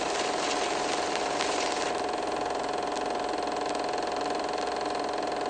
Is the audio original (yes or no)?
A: yes